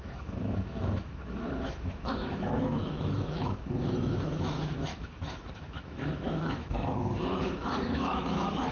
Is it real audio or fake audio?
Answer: fake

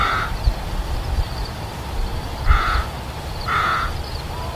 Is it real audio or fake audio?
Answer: real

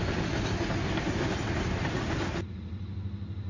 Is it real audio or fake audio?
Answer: real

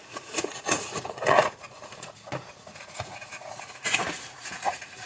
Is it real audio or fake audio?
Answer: fake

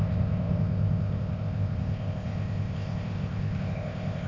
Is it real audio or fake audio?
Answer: fake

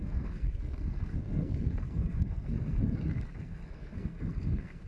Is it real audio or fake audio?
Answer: fake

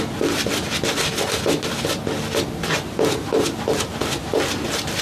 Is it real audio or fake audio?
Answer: real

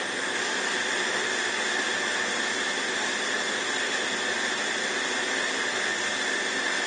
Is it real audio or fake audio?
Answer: real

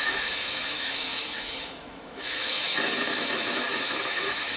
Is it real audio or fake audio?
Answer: fake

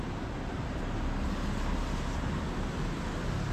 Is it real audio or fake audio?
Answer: real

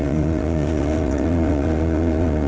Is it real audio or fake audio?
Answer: fake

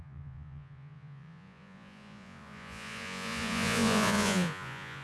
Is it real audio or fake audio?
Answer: fake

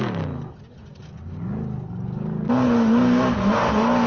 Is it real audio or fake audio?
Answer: real